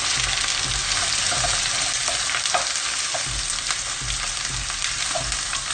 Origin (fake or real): real